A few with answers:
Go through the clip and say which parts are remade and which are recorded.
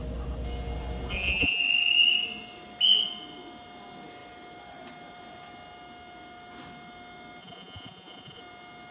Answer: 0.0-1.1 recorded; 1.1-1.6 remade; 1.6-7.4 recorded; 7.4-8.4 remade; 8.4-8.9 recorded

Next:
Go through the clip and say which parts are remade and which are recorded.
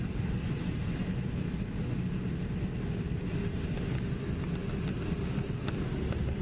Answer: 0.0-6.4 recorded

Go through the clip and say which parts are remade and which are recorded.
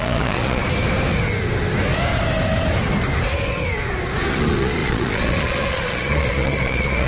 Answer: 0.0-0.6 remade; 0.6-4.3 recorded; 4.3-7.1 remade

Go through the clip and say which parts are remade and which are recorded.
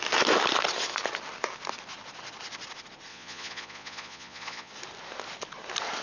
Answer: 0.0-3.1 recorded; 3.1-4.7 remade; 4.7-6.0 recorded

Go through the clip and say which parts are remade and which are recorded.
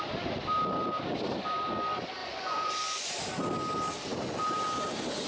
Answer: 0.0-2.2 recorded; 2.2-3.1 remade; 3.1-5.3 recorded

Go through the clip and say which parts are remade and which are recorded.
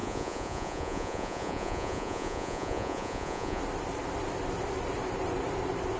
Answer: 0.0-3.6 remade; 3.6-6.0 recorded